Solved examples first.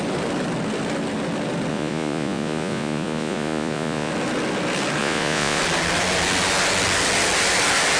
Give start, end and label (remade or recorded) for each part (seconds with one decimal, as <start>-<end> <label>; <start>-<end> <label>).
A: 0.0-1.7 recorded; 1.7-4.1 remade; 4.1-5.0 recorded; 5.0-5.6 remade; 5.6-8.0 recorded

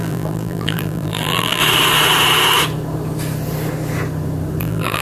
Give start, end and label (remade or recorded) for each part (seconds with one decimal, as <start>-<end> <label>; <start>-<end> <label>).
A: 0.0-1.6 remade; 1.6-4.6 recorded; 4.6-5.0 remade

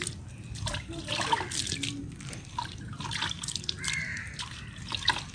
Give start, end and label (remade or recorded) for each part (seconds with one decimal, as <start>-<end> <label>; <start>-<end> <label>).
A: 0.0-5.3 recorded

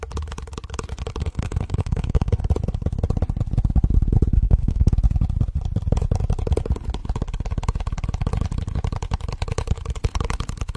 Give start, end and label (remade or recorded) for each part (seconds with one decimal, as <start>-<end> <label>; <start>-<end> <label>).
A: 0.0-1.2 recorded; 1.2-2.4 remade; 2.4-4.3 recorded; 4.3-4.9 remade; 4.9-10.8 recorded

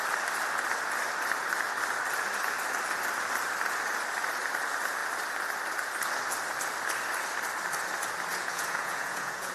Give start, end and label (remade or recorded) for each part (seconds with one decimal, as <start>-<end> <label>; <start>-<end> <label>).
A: 0.0-8.3 recorded; 8.3-9.5 remade

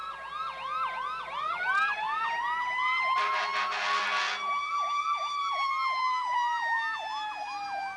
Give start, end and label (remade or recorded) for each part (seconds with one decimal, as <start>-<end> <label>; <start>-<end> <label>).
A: 0.0-8.0 recorded